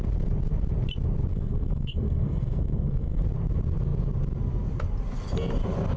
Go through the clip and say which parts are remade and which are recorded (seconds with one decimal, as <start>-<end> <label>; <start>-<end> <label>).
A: 0.0-1.3 recorded; 1.3-3.2 remade; 3.2-6.0 recorded